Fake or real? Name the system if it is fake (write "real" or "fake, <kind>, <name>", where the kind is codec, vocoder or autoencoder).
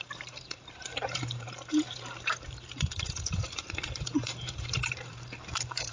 fake, vocoder, BigVGAN v2